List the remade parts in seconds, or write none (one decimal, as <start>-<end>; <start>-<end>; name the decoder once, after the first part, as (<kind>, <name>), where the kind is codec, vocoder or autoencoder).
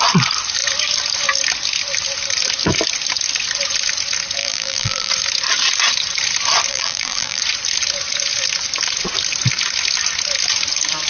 4.4-5.1 (vocoder, BigVGAN v2); 6.7-7.4